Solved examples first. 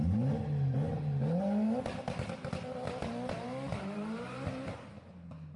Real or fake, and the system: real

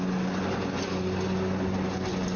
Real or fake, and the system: real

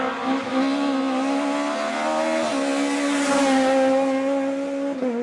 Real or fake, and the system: real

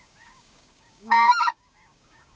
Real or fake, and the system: fake, codec, DAC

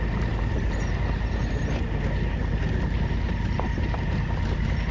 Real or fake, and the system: real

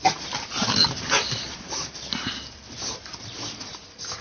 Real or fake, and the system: real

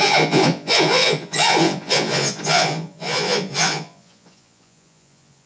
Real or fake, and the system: fake, vocoder, Vocos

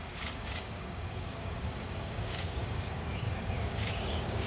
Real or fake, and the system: fake, codec, DAC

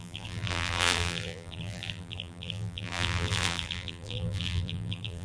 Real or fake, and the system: fake, vocoder, BigVGAN v2